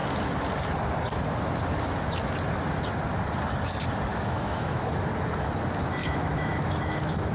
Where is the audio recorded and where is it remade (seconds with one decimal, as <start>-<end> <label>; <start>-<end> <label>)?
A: 0.0-4.1 recorded; 4.1-4.9 remade; 4.9-6.0 recorded; 6.0-7.3 remade